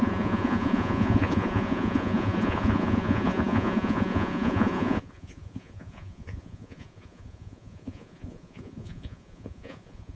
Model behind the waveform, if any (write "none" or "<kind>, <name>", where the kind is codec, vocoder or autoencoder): vocoder, Vocos